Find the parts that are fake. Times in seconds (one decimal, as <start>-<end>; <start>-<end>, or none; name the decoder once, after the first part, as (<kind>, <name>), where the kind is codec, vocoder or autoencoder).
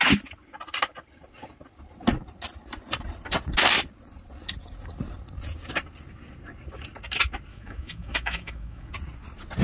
7.5-8.9 (autoencoder, DAC-VAE)